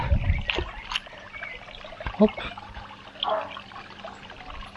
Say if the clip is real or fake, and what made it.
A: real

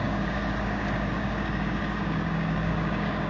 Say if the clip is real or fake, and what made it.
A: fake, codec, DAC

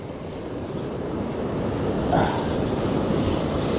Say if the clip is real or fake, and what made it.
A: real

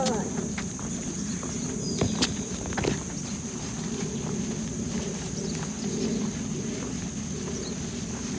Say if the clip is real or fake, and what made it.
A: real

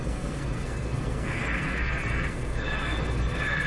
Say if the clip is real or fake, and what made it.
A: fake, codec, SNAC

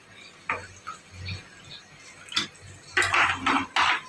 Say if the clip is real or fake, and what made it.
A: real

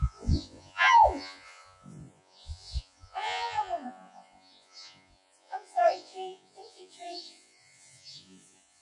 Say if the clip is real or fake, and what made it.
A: fake, vocoder, Vocos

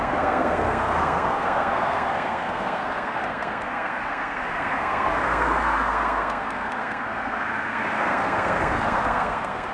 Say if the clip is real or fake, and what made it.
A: fake, codec, SNAC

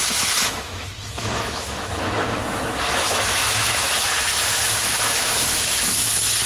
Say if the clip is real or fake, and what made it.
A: fake, autoencoder, DAC-VAE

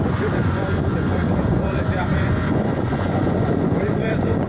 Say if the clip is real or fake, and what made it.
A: fake, vocoder, Vocos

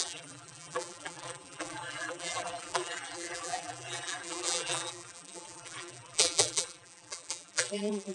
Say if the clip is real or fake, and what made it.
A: fake, vocoder, BigVGAN v2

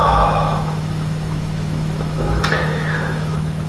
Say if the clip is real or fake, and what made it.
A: fake, autoencoder, DAC-VAE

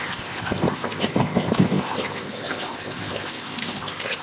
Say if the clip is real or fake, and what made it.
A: fake, codec, ZipCodec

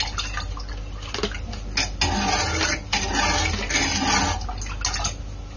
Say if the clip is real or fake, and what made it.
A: real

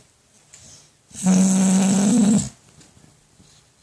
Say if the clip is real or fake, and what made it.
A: real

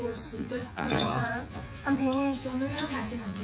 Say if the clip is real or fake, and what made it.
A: fake, vocoder, Vocos